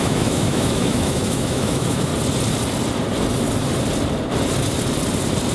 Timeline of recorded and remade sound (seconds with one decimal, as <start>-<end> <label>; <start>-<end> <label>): 0.0-2.1 remade; 2.1-5.5 recorded